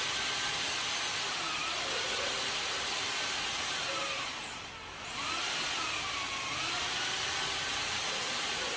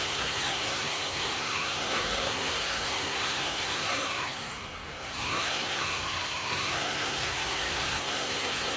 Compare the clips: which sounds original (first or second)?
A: first